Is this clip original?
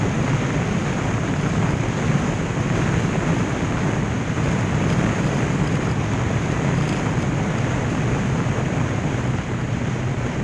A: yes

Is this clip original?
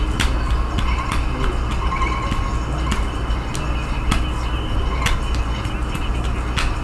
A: yes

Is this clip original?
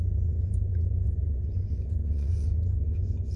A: no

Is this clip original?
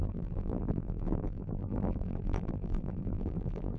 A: no